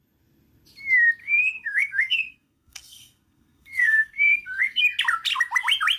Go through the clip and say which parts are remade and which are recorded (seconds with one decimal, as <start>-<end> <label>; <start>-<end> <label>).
0.0-1.2 recorded; 1.2-4.8 remade; 4.8-6.0 recorded